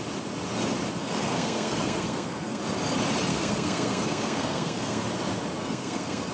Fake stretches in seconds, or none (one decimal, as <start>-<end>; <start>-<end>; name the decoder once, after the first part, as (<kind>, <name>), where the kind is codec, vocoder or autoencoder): 1.0-2.6 (codec, SNAC); 3.3-5.0; 5.6-6.3